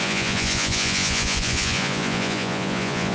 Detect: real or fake fake